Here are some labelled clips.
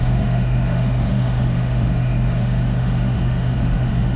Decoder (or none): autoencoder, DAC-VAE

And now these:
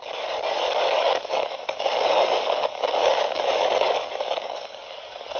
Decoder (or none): codec, DAC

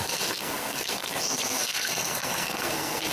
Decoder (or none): codec, SNAC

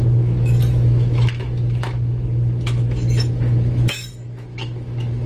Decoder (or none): autoencoder, DAC-VAE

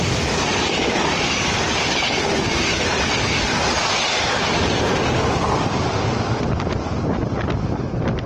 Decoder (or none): none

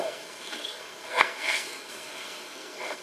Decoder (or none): codec, SNAC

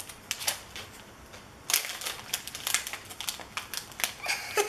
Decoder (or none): none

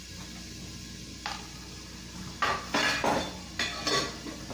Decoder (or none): none